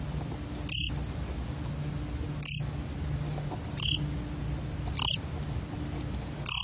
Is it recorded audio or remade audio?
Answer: recorded